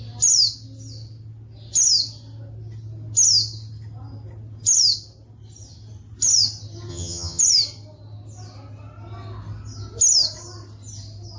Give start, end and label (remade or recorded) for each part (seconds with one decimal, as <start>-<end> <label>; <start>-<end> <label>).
0.0-6.9 recorded; 6.9-7.4 remade; 7.4-11.4 recorded